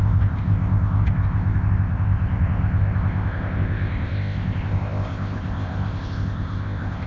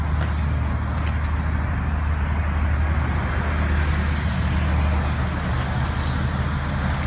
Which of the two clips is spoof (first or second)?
first